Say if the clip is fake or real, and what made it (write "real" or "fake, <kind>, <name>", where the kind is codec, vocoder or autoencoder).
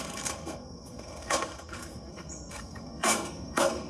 fake, codec, SNAC